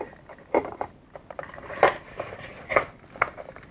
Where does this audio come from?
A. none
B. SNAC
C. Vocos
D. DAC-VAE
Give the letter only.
A